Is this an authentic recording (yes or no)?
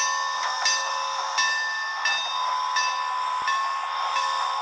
yes